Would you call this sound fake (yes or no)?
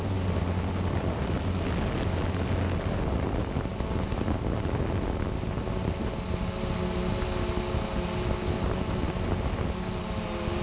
no